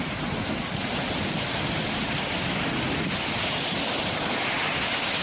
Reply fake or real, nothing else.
real